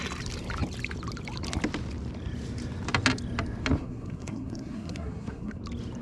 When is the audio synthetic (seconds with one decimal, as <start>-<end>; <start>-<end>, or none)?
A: 3.8-5.6